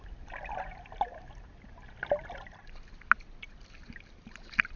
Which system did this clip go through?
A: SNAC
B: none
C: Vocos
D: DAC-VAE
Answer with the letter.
B